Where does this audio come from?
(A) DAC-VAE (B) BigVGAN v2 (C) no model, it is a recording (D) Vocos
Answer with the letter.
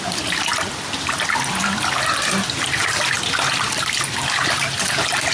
C